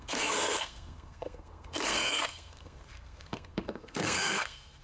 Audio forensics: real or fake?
fake